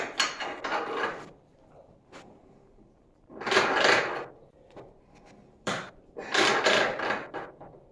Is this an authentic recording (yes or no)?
no